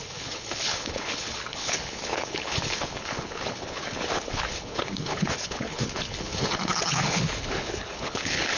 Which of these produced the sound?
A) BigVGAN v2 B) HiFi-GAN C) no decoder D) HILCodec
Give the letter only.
D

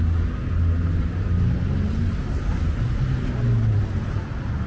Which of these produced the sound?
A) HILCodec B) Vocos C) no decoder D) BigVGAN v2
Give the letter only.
C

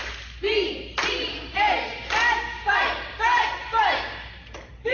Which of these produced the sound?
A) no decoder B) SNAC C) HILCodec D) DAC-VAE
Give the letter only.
A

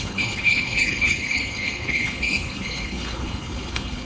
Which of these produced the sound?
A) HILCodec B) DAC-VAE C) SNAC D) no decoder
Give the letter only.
A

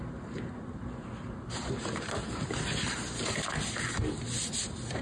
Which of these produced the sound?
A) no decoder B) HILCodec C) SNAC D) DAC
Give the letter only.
A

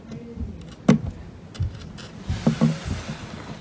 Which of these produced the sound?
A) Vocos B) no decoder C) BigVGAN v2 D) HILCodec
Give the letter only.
B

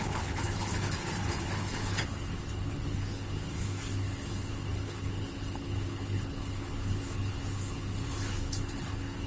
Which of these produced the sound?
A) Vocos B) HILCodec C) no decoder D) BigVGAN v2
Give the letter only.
B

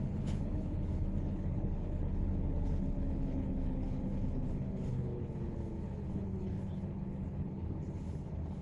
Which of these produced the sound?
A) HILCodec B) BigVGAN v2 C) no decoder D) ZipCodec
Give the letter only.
A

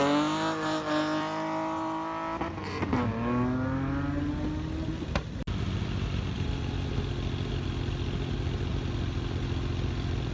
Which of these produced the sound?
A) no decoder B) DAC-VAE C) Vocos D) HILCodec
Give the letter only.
A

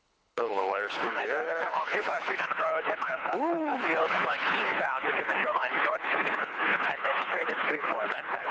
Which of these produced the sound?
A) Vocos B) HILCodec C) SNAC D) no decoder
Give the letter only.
B